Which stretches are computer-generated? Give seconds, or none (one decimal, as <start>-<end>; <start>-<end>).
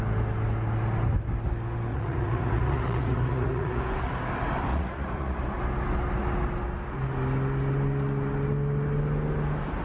1.9-3.8; 4.7-5.4